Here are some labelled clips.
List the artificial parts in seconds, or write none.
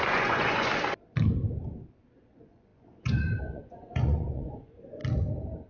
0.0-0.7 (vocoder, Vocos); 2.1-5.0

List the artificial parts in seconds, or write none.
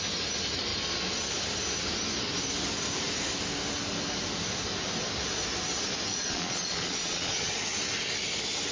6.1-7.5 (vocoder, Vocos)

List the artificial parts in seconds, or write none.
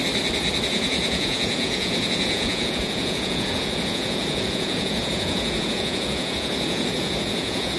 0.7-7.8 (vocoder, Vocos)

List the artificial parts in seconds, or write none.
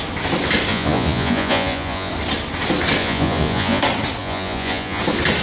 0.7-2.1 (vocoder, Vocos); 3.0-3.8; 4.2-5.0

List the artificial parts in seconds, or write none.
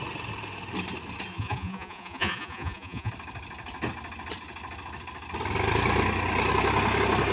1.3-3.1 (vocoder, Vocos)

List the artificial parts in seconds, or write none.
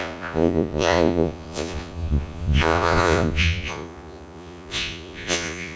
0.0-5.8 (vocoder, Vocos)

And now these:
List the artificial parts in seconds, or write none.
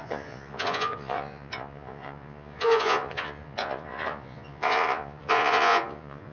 0.0-6.3 (vocoder, Vocos)